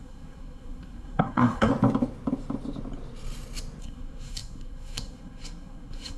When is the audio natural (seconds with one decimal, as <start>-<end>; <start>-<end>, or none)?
1.7-3.8